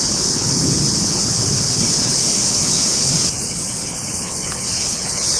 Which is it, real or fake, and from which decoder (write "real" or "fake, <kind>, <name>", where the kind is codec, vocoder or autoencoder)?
fake, codec, HILCodec